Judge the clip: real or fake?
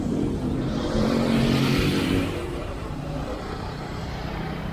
fake